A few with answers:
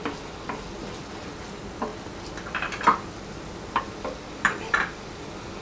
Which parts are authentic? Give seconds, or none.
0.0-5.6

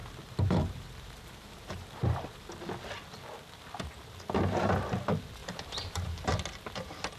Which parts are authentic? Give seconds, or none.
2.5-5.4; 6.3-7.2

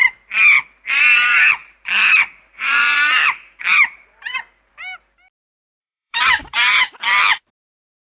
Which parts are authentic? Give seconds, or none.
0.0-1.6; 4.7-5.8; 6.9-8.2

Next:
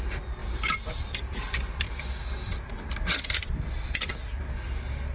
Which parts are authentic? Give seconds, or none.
0.0-0.4; 1.9-3.4; 4.1-5.1

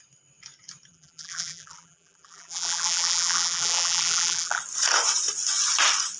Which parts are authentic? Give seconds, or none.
0.0-0.9; 4.6-6.2

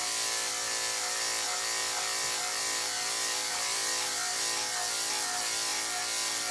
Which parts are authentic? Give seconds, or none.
0.0-1.8; 4.4-6.5

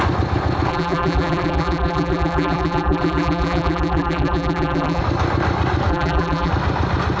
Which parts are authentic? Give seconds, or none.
0.0-0.7; 5.0-5.9; 6.5-7.2